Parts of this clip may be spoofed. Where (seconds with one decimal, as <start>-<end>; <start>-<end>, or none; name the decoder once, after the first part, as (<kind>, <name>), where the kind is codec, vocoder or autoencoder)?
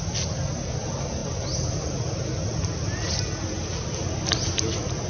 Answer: none